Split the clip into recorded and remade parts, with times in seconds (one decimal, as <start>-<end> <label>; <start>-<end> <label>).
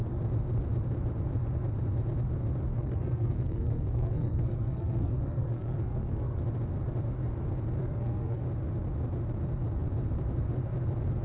0.0-2.7 recorded; 2.7-6.4 remade; 6.4-7.8 recorded; 7.8-8.4 remade; 8.4-11.2 recorded